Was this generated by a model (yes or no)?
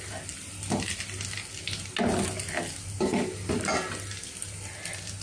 no